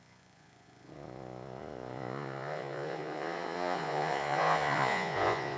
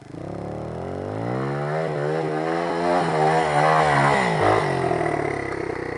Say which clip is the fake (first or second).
first